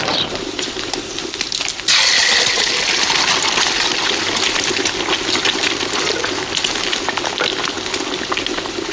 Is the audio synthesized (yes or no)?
no